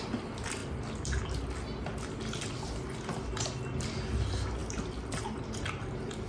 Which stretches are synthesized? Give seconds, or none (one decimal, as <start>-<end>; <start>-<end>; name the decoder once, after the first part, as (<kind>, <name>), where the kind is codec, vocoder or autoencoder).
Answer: none